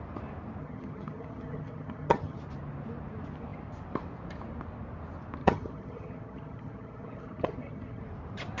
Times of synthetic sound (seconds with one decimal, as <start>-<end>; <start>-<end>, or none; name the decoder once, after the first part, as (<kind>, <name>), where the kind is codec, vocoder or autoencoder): 0.6-2.4 (vocoder, HiFi-GAN); 5.4-8.0